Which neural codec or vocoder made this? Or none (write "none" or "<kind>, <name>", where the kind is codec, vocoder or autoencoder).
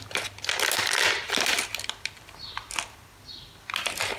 none